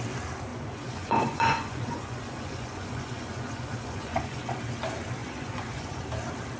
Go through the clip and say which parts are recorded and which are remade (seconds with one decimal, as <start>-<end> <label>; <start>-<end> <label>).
0.0-0.5 recorded; 0.5-4.5 remade; 4.5-5.2 recorded; 5.2-6.0 remade; 6.0-6.6 recorded